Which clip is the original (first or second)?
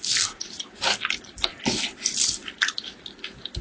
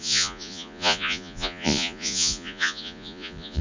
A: first